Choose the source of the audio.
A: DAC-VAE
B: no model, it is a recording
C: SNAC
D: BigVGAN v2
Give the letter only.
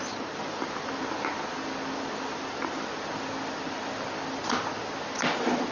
B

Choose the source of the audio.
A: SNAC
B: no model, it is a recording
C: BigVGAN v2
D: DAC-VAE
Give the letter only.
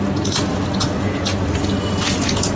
B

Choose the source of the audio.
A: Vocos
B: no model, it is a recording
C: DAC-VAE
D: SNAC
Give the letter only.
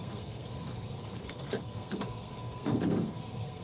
D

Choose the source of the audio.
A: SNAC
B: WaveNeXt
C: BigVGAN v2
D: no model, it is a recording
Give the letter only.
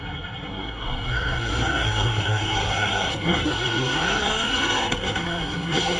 A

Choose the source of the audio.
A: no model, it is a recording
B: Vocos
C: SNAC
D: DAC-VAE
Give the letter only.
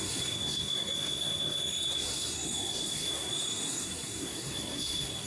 C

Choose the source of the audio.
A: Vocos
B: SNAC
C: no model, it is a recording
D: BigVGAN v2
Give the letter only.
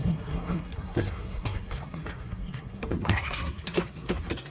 B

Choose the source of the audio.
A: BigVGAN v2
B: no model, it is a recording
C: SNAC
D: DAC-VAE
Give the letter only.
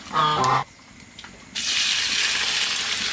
B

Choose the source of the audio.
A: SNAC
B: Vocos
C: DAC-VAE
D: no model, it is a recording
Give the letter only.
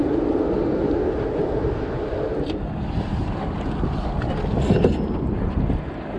D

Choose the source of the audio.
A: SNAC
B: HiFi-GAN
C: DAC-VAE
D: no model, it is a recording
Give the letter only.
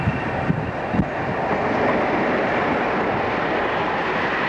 D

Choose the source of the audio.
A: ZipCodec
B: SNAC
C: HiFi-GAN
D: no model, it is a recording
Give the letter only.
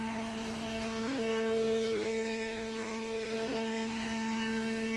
B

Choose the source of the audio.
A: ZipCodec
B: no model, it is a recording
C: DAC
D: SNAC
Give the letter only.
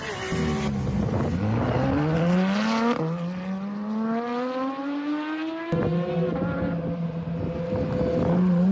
B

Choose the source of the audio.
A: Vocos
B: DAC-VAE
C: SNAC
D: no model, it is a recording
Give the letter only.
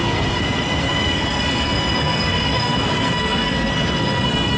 C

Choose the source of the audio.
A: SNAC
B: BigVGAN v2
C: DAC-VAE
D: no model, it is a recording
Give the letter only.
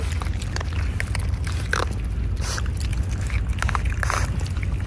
D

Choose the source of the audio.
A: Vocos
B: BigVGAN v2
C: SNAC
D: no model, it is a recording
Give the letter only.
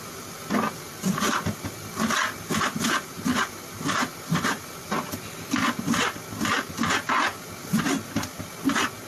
D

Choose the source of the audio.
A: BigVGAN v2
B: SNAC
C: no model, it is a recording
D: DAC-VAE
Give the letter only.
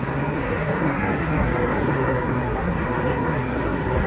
B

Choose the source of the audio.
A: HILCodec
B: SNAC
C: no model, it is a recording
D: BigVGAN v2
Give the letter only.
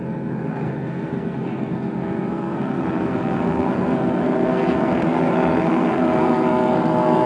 B